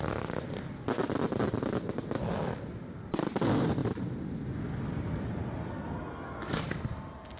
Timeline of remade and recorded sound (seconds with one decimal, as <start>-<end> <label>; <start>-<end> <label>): 0.0-1.0 recorded; 1.0-2.3 remade; 2.3-3.8 recorded; 3.8-4.5 remade; 4.5-7.4 recorded

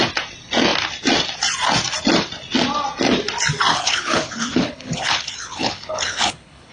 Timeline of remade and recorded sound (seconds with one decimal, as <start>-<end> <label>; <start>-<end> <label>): 0.0-3.7 recorded; 3.7-6.7 remade

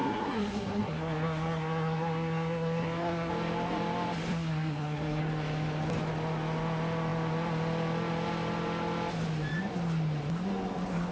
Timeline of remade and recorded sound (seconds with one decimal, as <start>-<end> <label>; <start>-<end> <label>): 0.0-3.3 remade; 3.3-4.3 recorded; 4.3-5.2 remade; 5.2-11.1 recorded

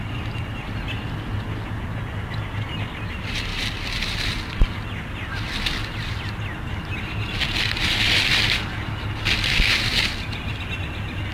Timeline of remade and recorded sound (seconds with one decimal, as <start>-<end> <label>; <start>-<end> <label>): 0.0-11.3 recorded

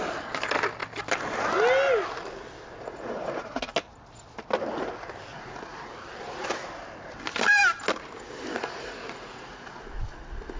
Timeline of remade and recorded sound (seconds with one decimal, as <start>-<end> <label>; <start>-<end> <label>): 0.0-2.8 recorded; 2.8-3.7 remade; 3.7-5.3 recorded; 5.3-5.9 remade; 5.9-8.5 recorded; 8.5-9.8 remade; 9.8-10.6 recorded

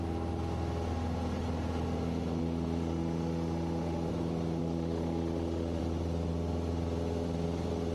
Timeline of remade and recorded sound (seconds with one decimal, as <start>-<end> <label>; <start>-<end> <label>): 0.0-2.4 recorded; 2.4-4.1 remade; 4.1-4.6 recorded; 4.6-5.8 remade; 5.8-7.9 recorded

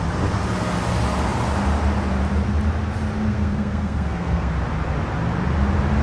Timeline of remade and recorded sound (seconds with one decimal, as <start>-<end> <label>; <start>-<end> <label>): 0.0-3.3 recorded; 3.3-4.5 remade; 4.5-6.0 recorded